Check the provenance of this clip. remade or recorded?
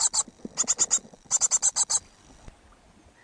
recorded